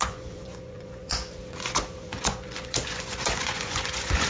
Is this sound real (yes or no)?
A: no